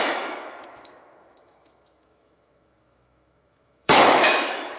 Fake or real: fake